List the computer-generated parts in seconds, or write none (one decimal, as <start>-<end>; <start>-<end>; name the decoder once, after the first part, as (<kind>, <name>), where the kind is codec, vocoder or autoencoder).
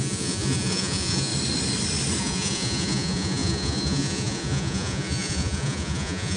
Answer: 0.0-1.3 (vocoder, Vocos); 2.2-6.4